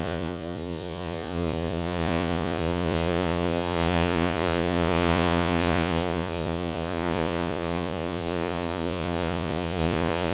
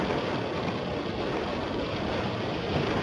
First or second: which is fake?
first